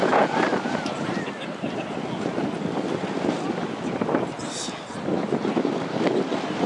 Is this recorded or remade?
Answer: recorded